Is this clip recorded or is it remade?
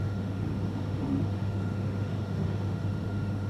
remade